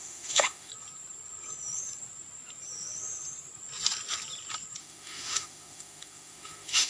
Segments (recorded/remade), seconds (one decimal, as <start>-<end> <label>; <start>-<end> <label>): 0.0-0.7 remade; 0.7-4.8 recorded; 4.8-6.9 remade